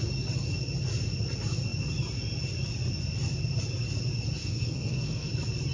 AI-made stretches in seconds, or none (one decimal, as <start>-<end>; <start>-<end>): 4.4-5.3